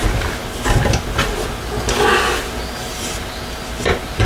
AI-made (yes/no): no